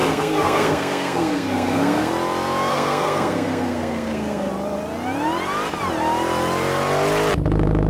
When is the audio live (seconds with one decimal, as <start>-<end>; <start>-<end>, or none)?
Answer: 2.1-2.7; 4.5-7.9